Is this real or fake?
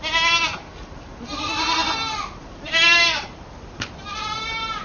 real